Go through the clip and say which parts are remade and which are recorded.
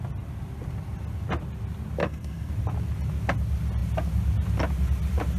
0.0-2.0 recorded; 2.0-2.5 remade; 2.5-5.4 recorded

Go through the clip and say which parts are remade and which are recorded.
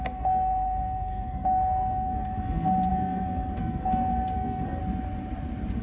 0.0-4.8 remade; 4.8-5.8 recorded